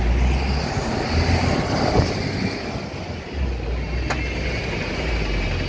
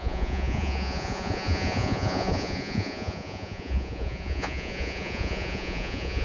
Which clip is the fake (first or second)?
second